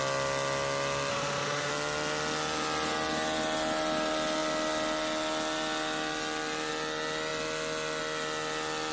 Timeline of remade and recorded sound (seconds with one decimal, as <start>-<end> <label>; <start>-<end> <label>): 0.0-1.1 recorded; 1.1-1.7 remade; 1.7-8.9 recorded